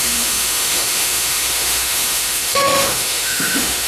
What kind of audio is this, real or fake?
fake